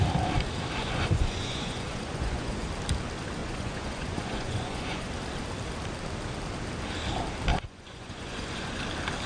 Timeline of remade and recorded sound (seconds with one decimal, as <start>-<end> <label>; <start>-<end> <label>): 0.0-0.8 recorded; 0.8-2.6 remade; 2.6-3.4 recorded; 3.4-5.1 remade; 5.1-7.5 recorded; 7.5-8.8 remade; 8.8-9.3 recorded